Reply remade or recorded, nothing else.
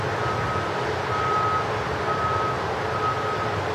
recorded